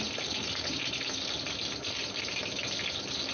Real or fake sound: real